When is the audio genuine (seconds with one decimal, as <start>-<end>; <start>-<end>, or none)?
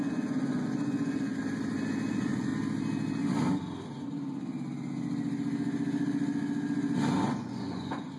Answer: 1.3-2.1; 2.5-7.4